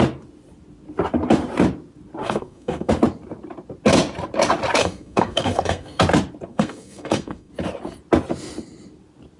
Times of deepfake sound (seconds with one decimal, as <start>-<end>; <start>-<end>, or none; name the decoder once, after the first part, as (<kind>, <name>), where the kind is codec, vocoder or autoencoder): 2.2-2.9 (codec, SNAC); 4.8-6.0; 6.5-7.5